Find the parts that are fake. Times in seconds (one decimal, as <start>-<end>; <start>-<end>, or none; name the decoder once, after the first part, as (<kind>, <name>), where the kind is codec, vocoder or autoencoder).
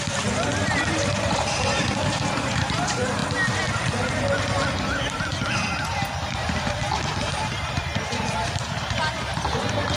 0.0-3.2 (vocoder, BigVGAN v2); 7.7-10.0